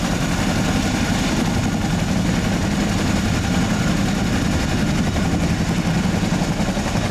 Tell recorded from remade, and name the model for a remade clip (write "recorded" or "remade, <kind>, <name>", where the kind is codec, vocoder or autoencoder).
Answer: recorded